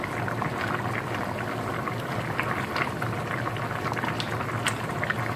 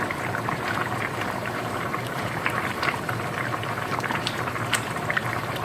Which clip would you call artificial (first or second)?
second